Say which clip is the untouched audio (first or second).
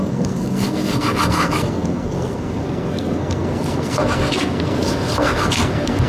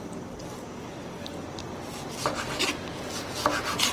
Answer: second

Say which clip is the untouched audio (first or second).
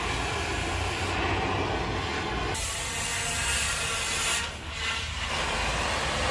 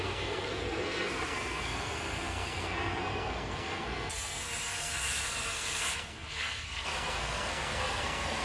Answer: first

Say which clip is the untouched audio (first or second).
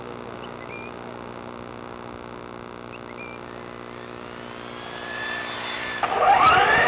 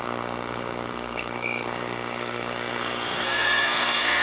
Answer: first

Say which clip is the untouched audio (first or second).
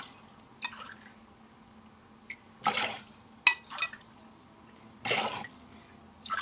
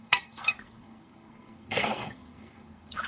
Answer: first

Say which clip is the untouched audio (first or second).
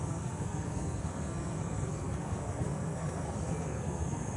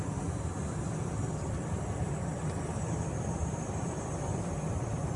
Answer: second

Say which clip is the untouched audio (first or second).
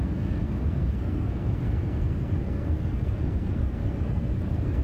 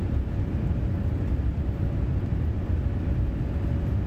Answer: second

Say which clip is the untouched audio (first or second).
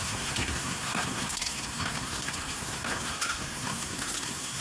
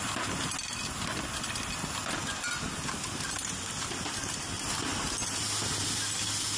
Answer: second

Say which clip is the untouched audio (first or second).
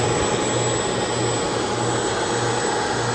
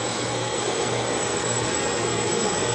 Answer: first